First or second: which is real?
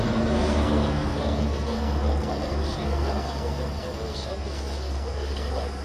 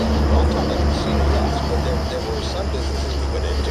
second